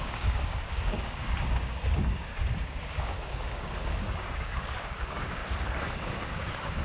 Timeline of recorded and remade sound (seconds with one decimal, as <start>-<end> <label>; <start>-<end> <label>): 0.0-5.4 remade; 5.4-5.9 recorded; 5.9-6.8 remade